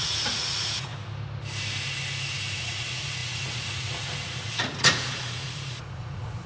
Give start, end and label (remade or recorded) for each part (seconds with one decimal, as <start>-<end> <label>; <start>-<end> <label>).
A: 0.0-0.9 remade; 0.9-2.6 recorded; 2.6-6.5 remade